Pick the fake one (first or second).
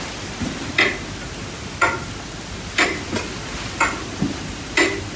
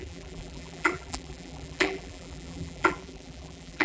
second